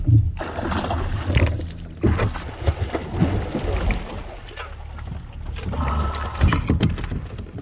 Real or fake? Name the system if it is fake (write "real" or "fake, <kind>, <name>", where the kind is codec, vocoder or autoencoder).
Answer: real